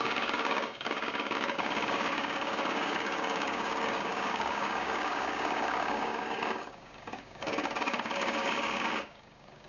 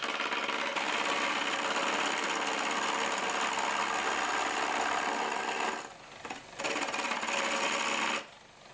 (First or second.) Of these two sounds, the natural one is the second